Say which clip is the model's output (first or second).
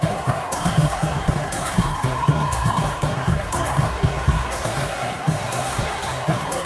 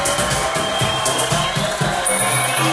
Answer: first